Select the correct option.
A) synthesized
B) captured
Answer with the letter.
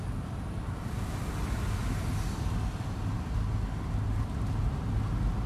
B